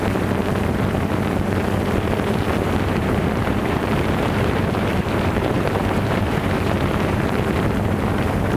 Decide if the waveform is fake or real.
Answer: fake